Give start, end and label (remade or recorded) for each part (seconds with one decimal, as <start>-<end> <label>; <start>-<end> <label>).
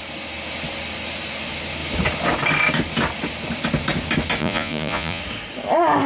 0.0-4.4 recorded; 4.4-5.2 remade; 5.2-6.1 recorded